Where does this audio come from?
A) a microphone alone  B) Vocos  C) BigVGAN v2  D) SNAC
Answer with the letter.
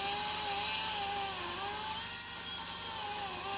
A